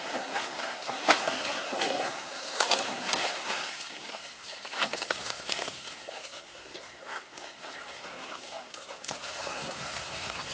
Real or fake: fake